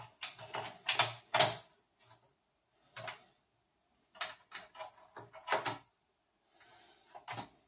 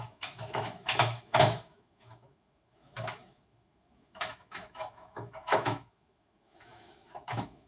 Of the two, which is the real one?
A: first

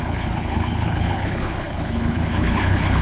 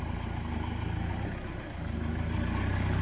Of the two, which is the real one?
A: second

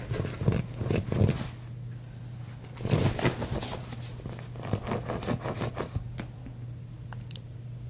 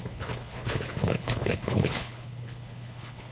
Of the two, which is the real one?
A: first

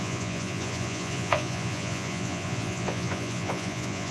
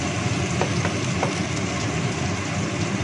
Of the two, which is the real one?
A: second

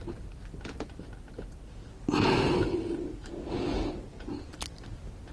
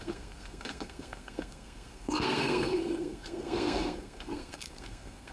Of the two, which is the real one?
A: first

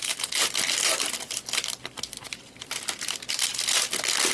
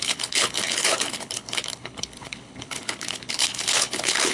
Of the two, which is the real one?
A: first